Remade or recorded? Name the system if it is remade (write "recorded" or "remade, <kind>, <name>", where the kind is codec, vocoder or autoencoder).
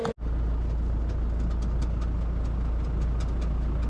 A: recorded